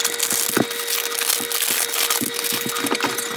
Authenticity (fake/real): real